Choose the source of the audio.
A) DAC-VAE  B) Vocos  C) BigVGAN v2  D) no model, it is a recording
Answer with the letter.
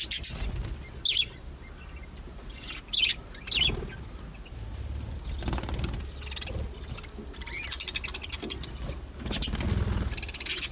D